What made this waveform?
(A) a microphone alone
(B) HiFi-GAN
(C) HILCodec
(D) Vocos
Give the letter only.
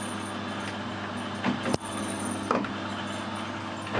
A